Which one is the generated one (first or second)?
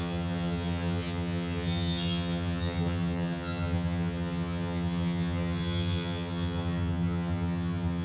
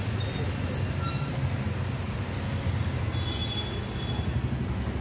first